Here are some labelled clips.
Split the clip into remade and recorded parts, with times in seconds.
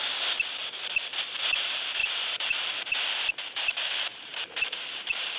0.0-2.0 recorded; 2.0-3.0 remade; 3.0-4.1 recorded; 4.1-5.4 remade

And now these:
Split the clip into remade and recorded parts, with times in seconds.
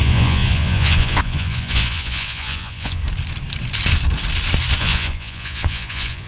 0.0-3.0 remade; 3.0-4.8 recorded; 4.8-6.3 remade